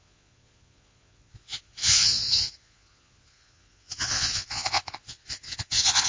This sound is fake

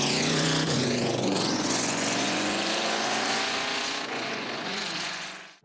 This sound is fake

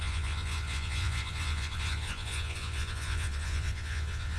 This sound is fake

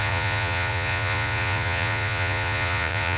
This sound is fake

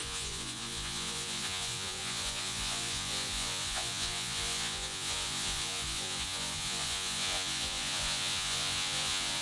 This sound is fake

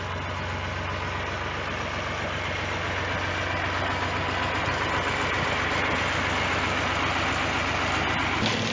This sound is real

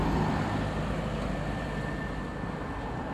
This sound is real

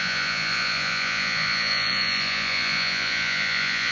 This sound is fake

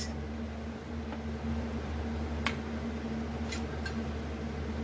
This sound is real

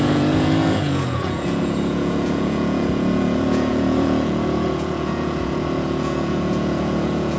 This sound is fake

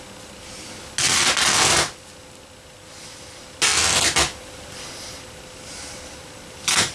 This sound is real